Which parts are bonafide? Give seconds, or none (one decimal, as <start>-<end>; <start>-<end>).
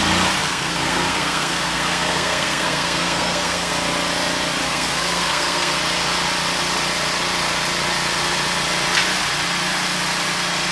0.0-0.4; 3.7-4.6; 5.8-10.7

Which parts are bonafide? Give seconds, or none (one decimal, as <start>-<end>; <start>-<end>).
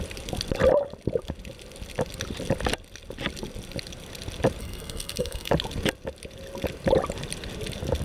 0.0-4.6; 5.5-8.0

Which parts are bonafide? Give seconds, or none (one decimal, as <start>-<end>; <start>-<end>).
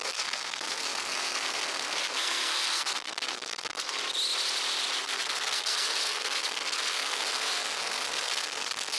4.0-5.0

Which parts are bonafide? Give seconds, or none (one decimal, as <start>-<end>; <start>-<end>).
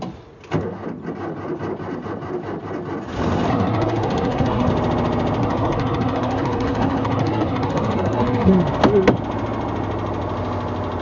0.0-3.5; 4.7-5.4; 8.5-11.0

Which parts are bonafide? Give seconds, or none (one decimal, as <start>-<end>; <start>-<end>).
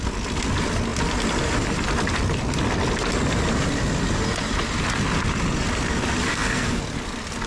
0.0-6.3; 6.8-7.5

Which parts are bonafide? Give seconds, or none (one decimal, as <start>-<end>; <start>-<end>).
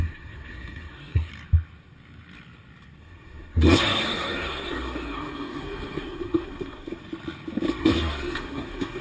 1.3-3.0; 7.0-7.8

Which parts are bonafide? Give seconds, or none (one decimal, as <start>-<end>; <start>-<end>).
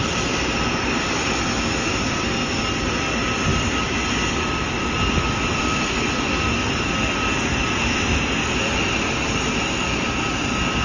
0.0-10.8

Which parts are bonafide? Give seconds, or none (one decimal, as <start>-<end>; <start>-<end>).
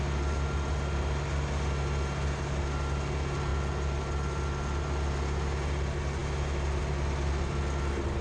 0.0-8.2